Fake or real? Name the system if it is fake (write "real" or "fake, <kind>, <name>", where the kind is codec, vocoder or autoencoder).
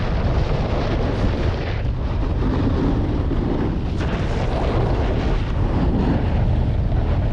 real